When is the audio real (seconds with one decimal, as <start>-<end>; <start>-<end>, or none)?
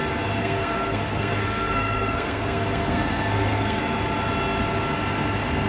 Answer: 0.0-0.4; 3.8-5.7